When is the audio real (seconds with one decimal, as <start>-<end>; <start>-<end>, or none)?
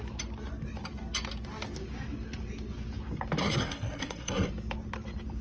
0.0-3.4; 4.5-5.4